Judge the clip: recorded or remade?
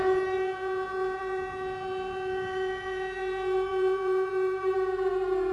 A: remade